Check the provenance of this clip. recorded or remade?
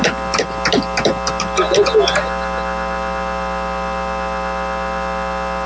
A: recorded